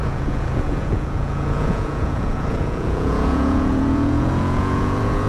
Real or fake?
fake